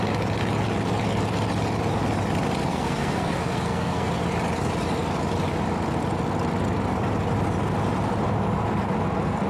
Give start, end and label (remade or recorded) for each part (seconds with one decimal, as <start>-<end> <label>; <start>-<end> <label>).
0.0-2.7 recorded; 2.7-4.1 remade; 4.1-9.5 recorded